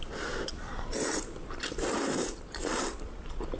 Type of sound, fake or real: fake